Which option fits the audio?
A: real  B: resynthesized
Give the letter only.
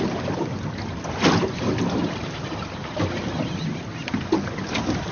A